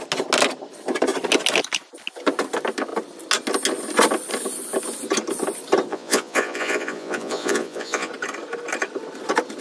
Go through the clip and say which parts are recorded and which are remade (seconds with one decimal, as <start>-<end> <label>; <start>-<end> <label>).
0.0-5.9 recorded; 5.9-8.1 remade; 8.1-9.6 recorded